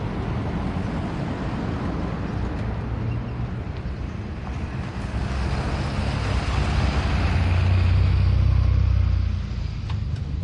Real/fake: real